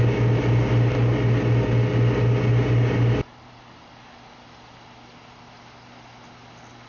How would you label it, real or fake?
real